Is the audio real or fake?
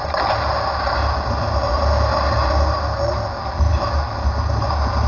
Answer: real